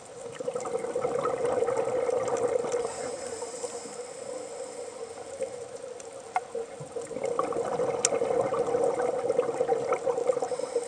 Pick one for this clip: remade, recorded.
recorded